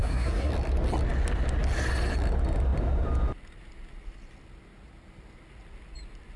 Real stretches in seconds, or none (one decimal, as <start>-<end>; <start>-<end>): 0.5-6.4

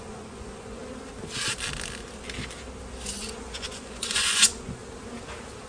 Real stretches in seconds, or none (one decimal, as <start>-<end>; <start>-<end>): 0.8-3.2; 4.8-5.7

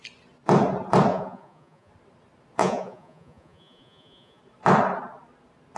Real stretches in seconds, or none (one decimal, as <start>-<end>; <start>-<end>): 0.0-1.1; 1.9-2.6; 4.4-5.8

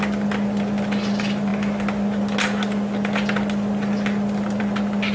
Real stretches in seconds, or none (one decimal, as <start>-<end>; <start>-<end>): 0.0-5.1

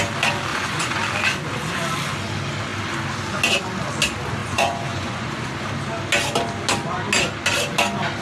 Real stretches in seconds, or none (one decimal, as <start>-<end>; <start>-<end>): 0.0-0.5; 1.0-4.4; 5.5-8.2

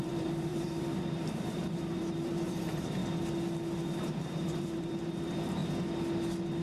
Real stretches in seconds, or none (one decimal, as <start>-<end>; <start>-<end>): 3.0-4.0; 5.6-6.6